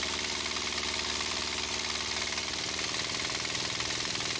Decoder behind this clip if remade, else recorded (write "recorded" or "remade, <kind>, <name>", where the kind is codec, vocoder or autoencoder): recorded